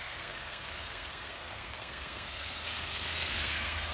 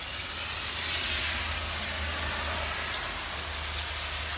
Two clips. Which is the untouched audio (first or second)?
second